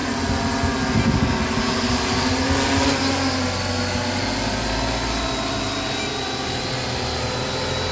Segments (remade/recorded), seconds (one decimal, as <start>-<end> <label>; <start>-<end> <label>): 0.0-7.9 recorded

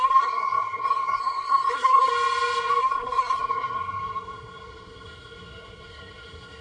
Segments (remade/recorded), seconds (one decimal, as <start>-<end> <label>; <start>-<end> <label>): 0.0-2.1 remade; 2.1-2.8 recorded; 2.8-6.6 remade